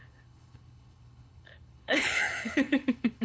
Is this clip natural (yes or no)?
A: no